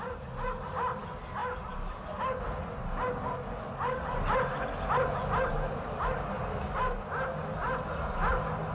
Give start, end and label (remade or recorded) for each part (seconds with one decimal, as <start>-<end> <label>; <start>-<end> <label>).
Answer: 0.0-8.7 recorded